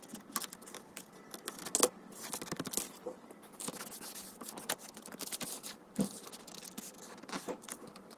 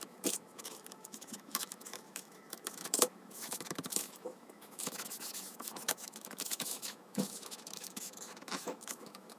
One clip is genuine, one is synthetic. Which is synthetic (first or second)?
second